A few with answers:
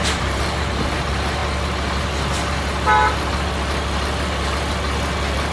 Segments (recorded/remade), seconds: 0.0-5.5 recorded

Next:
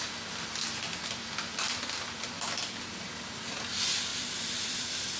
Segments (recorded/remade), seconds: 0.0-5.2 recorded

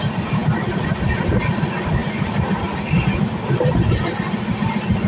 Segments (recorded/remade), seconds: 0.0-5.1 recorded